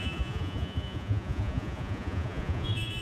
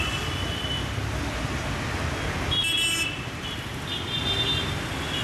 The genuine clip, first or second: second